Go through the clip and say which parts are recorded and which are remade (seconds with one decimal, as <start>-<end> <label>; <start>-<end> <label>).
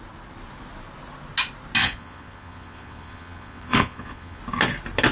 0.0-1.8 recorded; 1.8-4.4 remade; 4.4-5.1 recorded